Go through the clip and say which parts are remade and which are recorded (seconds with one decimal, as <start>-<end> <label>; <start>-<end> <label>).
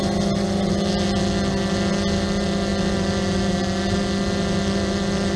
0.0-5.4 recorded